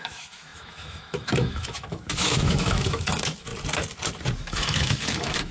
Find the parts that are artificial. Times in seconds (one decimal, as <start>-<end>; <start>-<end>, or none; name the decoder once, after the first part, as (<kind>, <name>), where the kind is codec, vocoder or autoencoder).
0.0-3.5 (autoencoder, DAC-VAE); 4.4-5.5